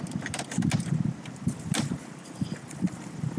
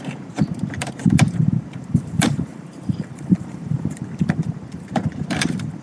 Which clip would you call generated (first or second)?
second